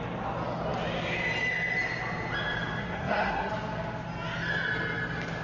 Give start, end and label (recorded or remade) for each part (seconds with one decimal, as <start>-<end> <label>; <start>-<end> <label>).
0.0-2.8 recorded; 2.8-3.5 remade; 3.5-5.4 recorded